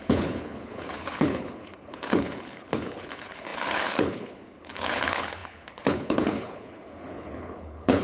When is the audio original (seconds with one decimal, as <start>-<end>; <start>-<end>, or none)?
none